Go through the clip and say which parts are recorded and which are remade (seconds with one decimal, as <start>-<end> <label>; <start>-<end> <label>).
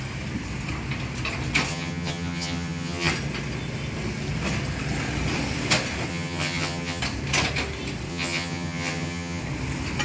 0.0-1.7 recorded; 1.7-3.1 remade; 3.1-6.1 recorded; 6.1-7.0 remade; 7.0-8.1 recorded; 8.1-9.4 remade; 9.4-10.0 recorded